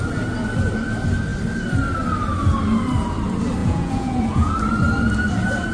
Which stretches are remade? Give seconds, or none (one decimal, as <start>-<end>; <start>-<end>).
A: 3.6-4.5

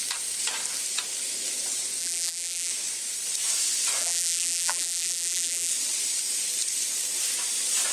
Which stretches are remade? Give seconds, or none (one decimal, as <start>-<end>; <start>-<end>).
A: 2.0-2.7; 4.0-5.7

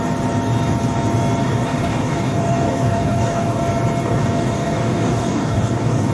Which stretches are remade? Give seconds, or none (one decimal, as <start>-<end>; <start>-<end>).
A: 1.4-3.6; 4.0-6.1

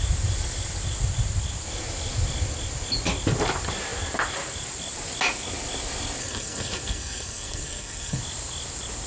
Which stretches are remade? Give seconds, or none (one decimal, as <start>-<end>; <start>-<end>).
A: 6.2-8.2